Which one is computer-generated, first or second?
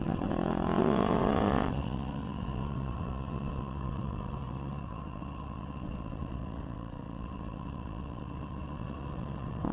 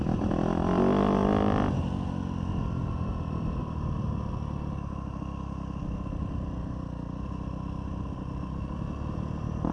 first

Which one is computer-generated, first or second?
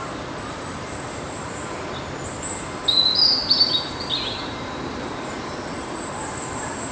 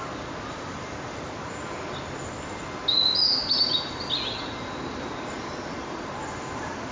first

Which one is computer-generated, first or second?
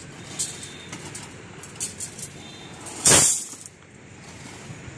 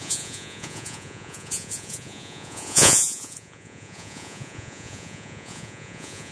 second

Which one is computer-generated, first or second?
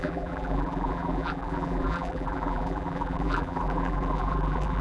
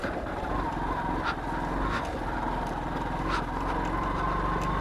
first